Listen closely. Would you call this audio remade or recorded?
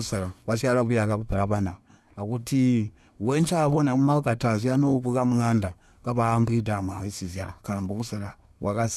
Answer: remade